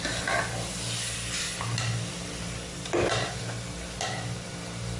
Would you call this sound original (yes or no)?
yes